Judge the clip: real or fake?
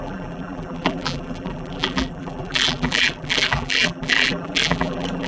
fake